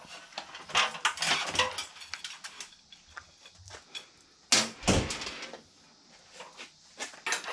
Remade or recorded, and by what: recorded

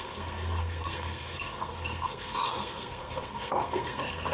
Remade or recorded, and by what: remade, codec, SNAC